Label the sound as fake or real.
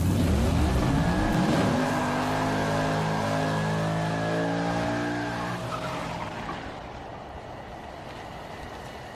real